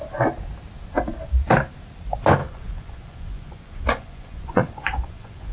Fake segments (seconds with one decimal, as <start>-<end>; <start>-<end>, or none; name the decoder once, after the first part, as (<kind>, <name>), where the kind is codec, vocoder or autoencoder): 2.4-5.5 (vocoder, Vocos)